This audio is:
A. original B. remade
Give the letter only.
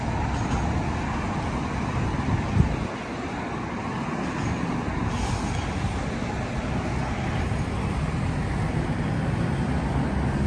A